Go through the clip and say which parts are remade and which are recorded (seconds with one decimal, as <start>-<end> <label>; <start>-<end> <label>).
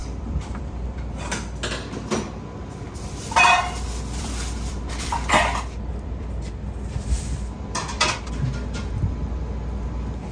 0.0-1.0 remade; 1.0-2.6 recorded; 2.6-6.5 remade; 6.5-10.3 recorded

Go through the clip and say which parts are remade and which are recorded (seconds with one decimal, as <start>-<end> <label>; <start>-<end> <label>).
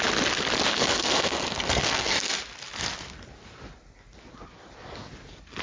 0.0-0.7 recorded; 0.7-2.3 remade; 2.3-5.6 recorded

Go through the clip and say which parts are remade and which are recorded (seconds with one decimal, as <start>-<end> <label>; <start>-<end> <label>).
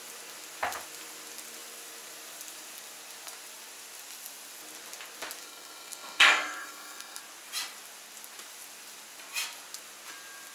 0.0-5.4 recorded; 5.4-7.2 remade; 7.2-10.5 recorded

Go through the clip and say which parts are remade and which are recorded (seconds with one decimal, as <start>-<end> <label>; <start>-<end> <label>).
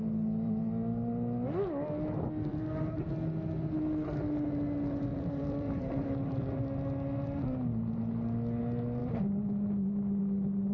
0.0-2.5 recorded; 2.5-3.1 remade; 3.1-5.1 recorded; 5.1-6.6 remade; 6.6-10.7 recorded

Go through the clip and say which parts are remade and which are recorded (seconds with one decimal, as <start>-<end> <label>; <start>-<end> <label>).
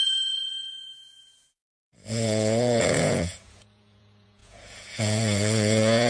0.0-6.1 remade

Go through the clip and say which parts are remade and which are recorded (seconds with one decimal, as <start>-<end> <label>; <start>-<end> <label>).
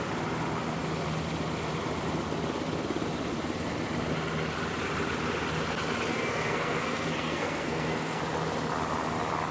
0.0-6.1 recorded; 6.1-8.2 remade; 8.2-9.5 recorded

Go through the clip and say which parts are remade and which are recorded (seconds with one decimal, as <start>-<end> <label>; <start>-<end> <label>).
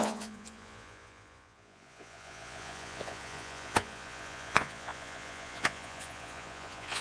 0.0-7.0 remade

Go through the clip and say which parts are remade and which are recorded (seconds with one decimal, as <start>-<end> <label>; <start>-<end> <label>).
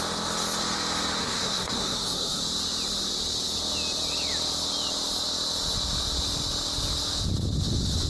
0.0-1.2 recorded; 1.2-2.4 remade; 2.4-8.1 recorded